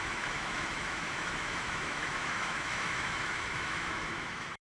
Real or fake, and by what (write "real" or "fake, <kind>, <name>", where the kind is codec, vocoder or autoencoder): fake, autoencoder, DAC-VAE